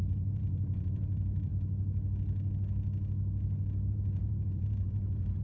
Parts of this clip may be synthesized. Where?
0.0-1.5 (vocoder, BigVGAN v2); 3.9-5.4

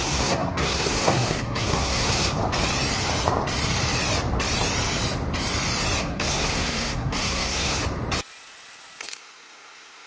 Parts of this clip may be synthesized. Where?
0.0-2.4 (codec, SNAC); 6.0-7.8; 9.0-10.1

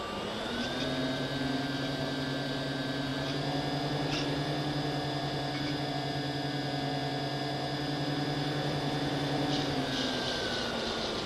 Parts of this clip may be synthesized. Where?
none

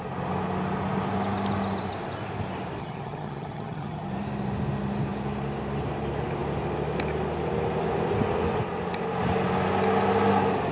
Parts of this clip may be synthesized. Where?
2.8-4.1 (vocoder, HiFi-GAN)

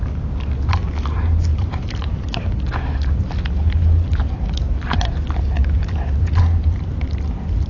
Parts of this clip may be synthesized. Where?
1.5-2.6 (vocoder, BigVGAN v2); 5.6-6.4

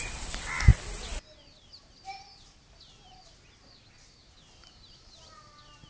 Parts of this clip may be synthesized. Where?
none